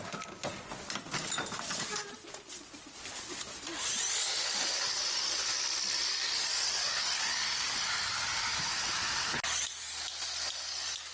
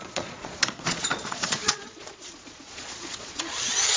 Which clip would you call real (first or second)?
first